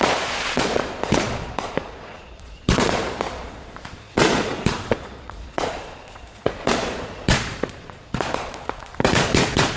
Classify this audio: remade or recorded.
remade